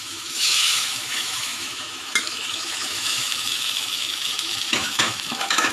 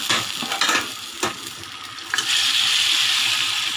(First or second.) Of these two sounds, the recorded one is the second